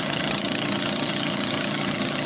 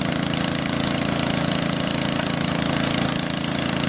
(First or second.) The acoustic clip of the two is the second